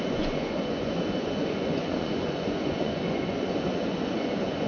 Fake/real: fake